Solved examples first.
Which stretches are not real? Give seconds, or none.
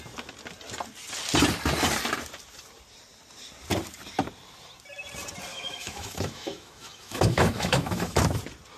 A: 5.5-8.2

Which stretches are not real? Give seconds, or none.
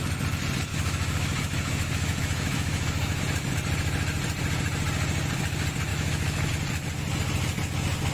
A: 0.7-3.2; 5.9-6.5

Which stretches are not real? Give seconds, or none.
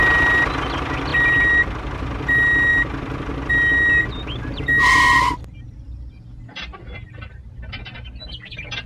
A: none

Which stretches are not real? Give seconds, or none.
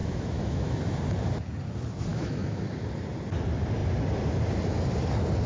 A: 0.0-0.8; 2.1-2.7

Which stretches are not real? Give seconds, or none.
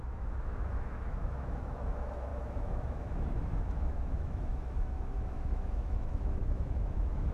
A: 0.0-7.3